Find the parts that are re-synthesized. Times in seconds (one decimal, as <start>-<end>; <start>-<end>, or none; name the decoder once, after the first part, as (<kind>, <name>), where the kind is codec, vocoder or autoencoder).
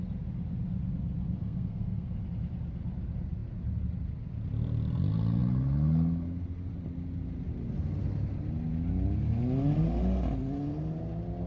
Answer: 1.4-2.2 (codec, SNAC)